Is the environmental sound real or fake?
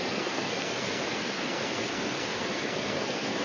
fake